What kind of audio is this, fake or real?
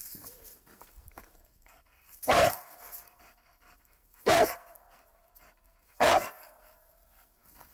fake